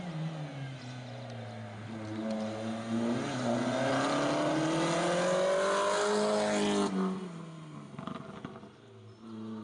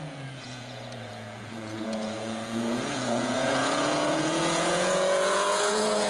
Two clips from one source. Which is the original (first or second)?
first